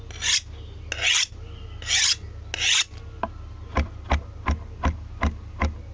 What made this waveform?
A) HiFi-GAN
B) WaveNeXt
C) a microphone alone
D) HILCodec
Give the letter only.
C